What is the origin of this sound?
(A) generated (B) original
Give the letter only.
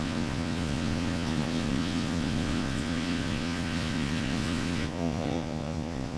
A